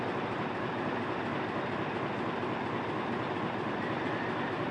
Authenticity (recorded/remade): recorded